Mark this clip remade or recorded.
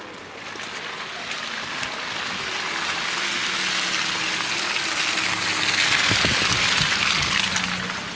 recorded